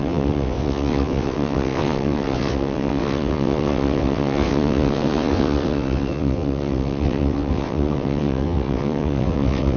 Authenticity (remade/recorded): remade